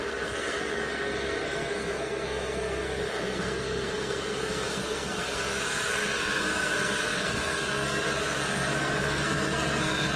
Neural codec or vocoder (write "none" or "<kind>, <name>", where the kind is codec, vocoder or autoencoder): codec, SNAC